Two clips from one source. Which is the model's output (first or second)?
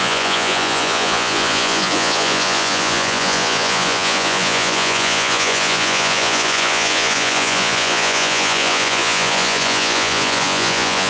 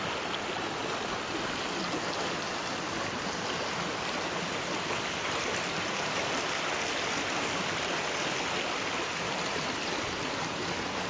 first